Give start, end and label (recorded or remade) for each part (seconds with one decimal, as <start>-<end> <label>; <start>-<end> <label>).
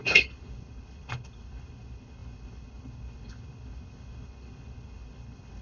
0.0-5.6 remade